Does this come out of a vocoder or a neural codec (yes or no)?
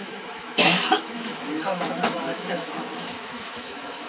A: yes